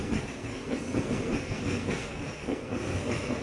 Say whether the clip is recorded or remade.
remade